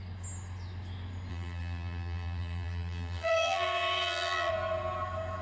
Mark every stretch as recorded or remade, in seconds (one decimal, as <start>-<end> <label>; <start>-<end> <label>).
0.0-1.3 recorded; 1.3-4.5 remade; 4.5-5.4 recorded